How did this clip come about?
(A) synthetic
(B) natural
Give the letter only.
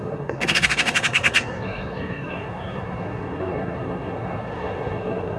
A